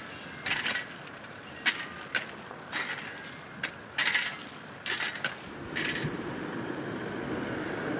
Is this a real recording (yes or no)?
yes